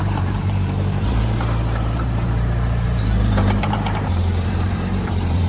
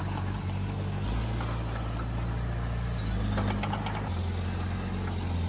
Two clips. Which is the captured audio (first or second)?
second